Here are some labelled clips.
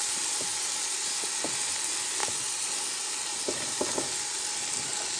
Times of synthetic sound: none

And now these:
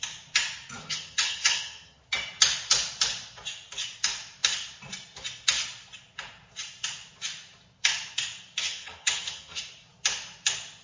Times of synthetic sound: 0.8-2.0 (vocoder, HiFi-GAN); 8.6-9.6

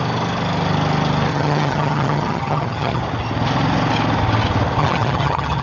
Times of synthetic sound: 1.3-3.0 (vocoder, HiFi-GAN); 4.8-5.6

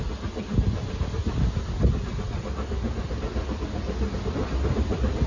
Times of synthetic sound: none

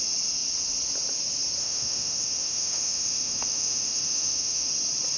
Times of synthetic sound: 1.6-4.7 (autoencoder, DAC-VAE)